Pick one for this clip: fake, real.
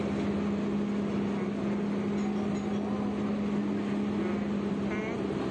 real